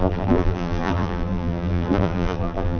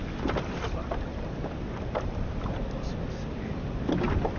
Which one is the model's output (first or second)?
first